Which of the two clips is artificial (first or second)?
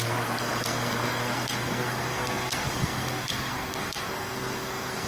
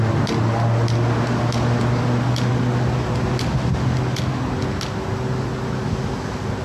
first